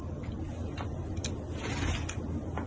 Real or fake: real